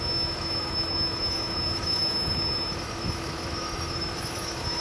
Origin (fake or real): fake